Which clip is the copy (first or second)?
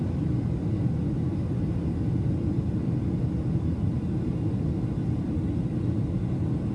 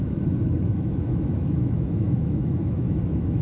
second